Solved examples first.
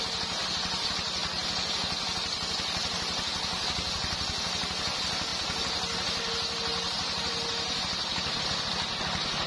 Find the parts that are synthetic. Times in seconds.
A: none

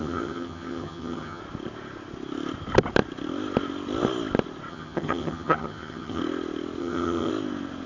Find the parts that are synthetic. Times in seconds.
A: 0.0-1.4 (vocoder, HiFi-GAN); 4.7-6.2; 6.8-7.3

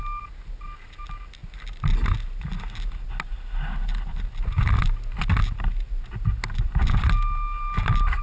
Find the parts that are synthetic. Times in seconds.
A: none